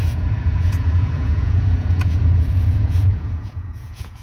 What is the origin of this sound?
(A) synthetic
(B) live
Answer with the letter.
A